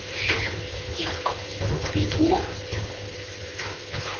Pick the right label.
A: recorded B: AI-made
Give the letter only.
B